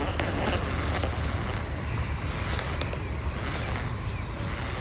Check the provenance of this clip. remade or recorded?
recorded